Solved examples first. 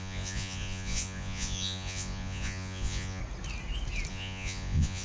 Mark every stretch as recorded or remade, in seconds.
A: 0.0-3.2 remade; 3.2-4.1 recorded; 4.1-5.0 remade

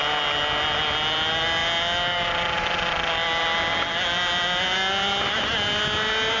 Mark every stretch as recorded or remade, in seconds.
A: 0.0-6.4 recorded